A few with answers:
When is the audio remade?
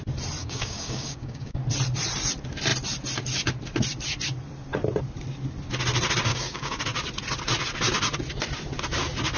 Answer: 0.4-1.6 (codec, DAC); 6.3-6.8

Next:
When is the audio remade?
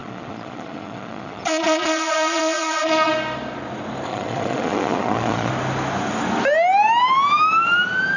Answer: 0.0-3.1 (vocoder, Vocos); 4.1-5.5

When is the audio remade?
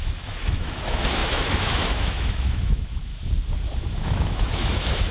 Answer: 0.0-3.1 (autoencoder, DAC-VAE); 3.8-5.1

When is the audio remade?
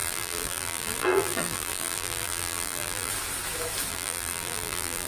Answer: 0.0-3.1 (vocoder, BigVGAN v2); 3.9-5.1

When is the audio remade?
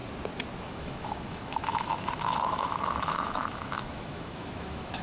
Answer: 0.6-5.0 (autoencoder, DAC-VAE)